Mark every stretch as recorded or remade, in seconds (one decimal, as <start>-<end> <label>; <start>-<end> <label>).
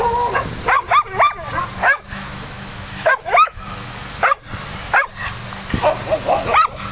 0.0-1.8 recorded; 1.8-4.2 remade; 4.2-6.9 recorded